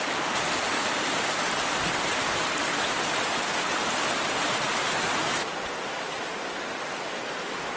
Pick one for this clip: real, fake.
real